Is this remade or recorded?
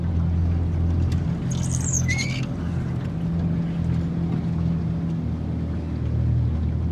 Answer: recorded